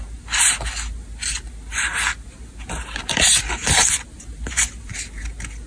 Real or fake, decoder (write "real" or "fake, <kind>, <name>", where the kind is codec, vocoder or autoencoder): real